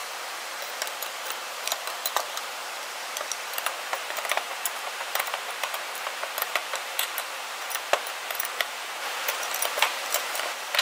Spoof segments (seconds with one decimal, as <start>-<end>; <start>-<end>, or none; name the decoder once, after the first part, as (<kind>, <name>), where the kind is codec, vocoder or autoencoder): 0.0-10.8 (vocoder, BigVGAN v2)